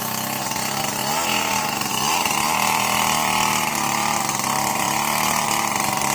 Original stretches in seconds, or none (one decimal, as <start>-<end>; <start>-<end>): 1.0-1.9